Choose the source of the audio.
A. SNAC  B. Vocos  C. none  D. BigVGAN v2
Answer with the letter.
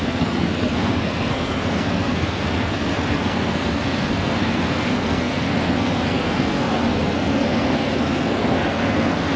A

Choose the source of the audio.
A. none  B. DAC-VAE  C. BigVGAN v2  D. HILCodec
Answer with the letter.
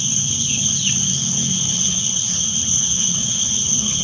D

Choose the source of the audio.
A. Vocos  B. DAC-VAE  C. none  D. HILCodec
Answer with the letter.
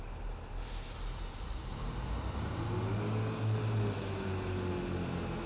C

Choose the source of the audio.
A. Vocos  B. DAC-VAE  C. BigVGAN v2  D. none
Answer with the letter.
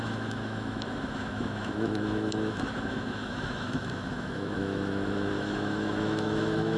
B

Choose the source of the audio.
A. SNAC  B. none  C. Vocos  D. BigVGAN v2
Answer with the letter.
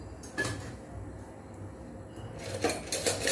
B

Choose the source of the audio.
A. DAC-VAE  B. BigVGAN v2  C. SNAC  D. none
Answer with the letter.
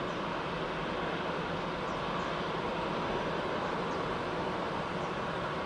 D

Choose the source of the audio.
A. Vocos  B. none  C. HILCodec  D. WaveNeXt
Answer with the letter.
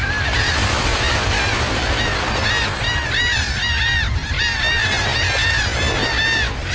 B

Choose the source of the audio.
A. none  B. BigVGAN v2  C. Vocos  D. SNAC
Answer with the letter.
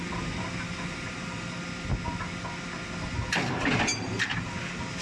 A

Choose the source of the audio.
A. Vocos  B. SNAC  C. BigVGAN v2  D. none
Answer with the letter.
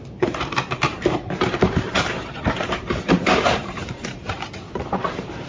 C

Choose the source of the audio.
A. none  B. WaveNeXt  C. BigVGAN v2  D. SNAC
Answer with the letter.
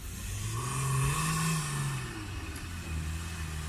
A